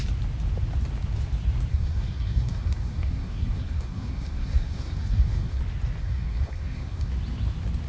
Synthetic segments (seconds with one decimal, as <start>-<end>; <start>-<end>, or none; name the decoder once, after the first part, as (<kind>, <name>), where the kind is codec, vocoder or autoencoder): 1.7-5.6 (codec, SNAC); 6.0-7.1